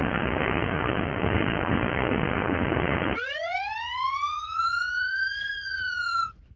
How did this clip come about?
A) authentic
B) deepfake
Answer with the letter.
B